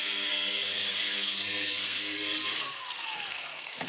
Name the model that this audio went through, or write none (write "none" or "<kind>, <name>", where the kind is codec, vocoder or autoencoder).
codec, SNAC